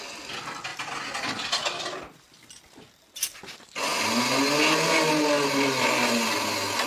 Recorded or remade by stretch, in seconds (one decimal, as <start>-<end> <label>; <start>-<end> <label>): 0.0-6.9 recorded